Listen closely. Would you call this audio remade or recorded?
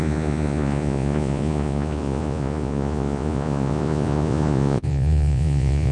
remade